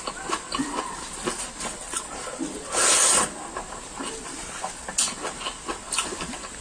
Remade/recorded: recorded